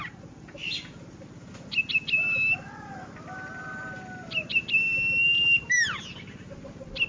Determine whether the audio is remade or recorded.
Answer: recorded